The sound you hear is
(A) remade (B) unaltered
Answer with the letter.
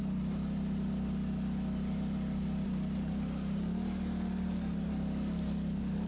B